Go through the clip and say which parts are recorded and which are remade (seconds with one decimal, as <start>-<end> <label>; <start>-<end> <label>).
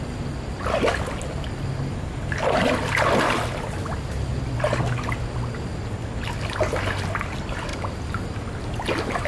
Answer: 0.0-9.3 recorded